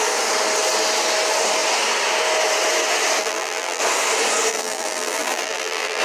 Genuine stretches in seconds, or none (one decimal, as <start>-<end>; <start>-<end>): 0.0-3.2; 3.8-4.5